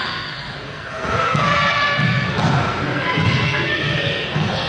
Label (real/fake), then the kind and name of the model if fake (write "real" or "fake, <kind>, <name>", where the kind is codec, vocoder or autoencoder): fake, codec, SNAC